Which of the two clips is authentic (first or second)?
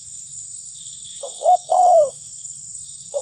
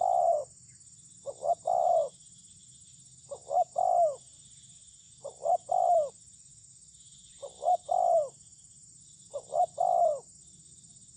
second